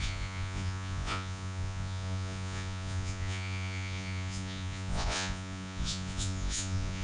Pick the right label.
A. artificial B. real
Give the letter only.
A